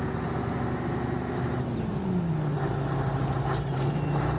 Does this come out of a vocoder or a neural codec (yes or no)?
no